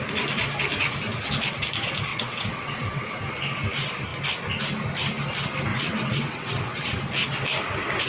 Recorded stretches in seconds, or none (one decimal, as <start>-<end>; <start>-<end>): 0.0-2.1; 3.0-5.7; 7.0-8.1